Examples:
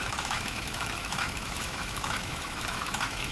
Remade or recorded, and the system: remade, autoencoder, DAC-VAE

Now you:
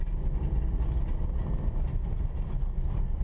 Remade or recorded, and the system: recorded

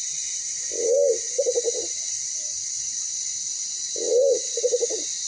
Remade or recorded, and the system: recorded